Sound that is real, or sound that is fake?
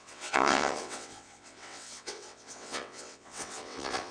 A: fake